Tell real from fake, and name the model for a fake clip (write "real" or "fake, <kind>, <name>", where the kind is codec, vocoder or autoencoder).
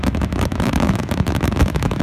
fake, autoencoder, DAC-VAE